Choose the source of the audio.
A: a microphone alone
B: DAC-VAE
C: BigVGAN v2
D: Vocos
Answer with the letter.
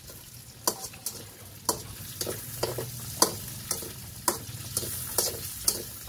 A